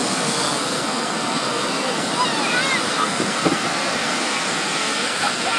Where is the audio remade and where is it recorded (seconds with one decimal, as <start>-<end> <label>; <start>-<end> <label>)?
0.0-2.1 remade; 2.1-2.9 recorded; 2.9-5.6 remade